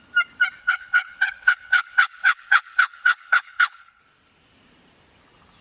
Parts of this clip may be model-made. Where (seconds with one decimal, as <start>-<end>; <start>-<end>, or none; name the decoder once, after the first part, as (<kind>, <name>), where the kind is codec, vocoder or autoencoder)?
0.6-4.0 (codec, HILCodec)